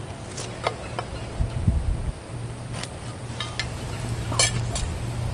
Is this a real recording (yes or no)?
yes